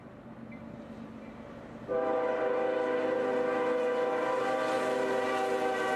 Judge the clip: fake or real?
real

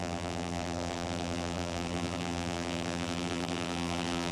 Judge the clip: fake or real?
fake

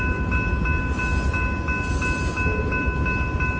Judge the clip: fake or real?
real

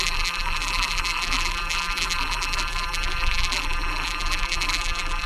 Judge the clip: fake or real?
fake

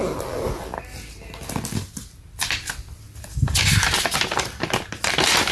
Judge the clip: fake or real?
real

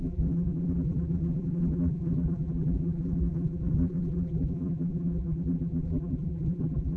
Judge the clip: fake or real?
fake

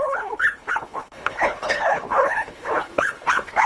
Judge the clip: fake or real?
fake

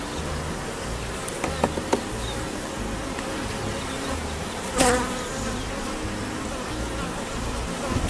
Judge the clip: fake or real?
real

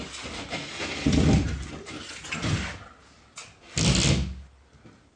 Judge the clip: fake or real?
real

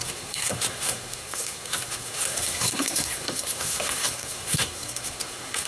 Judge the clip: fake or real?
fake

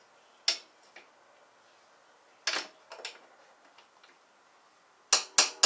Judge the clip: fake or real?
real